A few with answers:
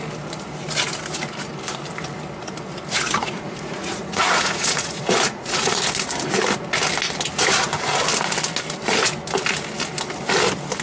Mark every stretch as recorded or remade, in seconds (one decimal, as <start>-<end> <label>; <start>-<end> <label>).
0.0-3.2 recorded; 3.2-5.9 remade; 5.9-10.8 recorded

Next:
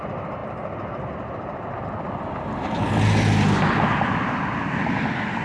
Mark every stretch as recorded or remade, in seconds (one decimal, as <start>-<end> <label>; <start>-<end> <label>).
0.0-5.4 recorded

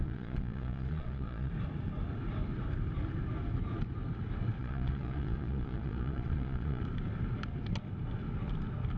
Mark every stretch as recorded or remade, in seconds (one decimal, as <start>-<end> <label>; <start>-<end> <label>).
0.0-1.5 remade; 1.5-4.6 recorded; 4.6-6.8 remade; 6.8-9.0 recorded